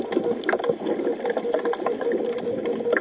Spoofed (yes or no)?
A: no